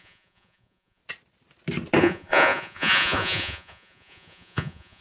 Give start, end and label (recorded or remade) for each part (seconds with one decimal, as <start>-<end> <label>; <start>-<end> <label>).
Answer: 0.0-1.0 remade; 1.0-2.0 recorded; 2.0-5.0 remade